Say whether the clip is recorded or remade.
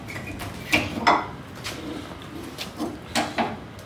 recorded